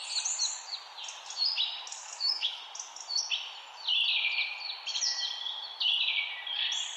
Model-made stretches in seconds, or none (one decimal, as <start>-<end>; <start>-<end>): 1.9-2.6

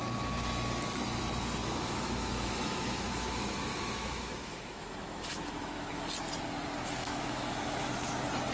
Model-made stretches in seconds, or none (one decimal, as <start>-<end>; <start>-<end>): 1.6-6.0; 7.0-7.9

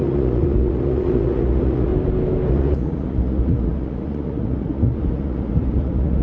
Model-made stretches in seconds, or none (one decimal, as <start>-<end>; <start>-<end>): 0.0-1.9; 2.5-6.2

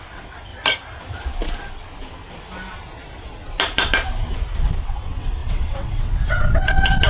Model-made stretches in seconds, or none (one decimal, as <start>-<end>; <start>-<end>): 0.0-0.5; 4.8-7.1

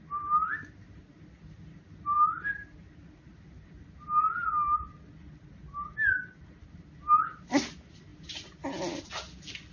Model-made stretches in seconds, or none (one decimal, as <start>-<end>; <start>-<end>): none

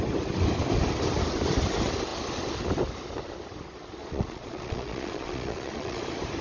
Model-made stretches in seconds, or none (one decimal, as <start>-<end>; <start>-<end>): 4.0-6.0

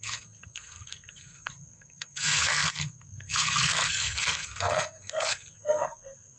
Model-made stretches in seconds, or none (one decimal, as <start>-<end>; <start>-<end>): 0.0-6.4